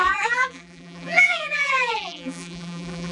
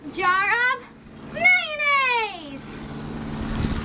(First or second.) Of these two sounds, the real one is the second